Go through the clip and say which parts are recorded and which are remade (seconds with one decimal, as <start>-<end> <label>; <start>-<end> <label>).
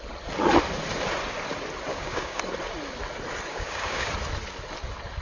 0.0-1.9 recorded; 1.9-2.4 remade; 2.4-3.5 recorded; 3.5-4.1 remade; 4.1-5.2 recorded